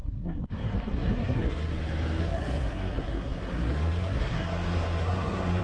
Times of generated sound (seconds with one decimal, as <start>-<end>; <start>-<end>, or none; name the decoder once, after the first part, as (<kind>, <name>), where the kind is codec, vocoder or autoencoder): 0.0-1.7 (codec, SNAC); 2.2-5.6